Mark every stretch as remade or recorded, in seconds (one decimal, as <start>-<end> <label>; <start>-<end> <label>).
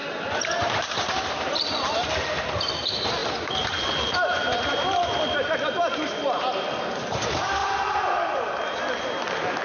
0.0-2.4 remade; 2.4-7.6 recorded; 7.6-8.6 remade; 8.6-9.6 recorded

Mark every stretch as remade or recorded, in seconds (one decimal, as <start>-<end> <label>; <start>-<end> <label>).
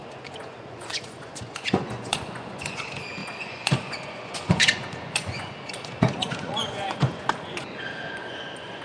0.0-8.8 remade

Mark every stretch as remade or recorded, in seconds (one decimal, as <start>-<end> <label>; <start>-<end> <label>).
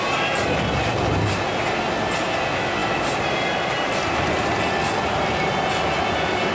0.0-6.5 recorded